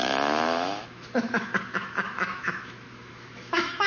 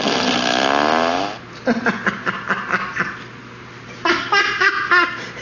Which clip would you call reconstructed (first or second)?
first